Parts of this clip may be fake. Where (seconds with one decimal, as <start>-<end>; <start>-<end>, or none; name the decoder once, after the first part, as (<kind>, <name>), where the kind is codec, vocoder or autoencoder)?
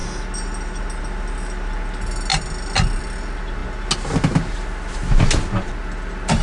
none